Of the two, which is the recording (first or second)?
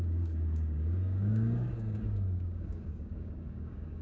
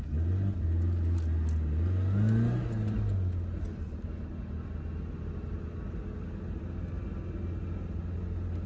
second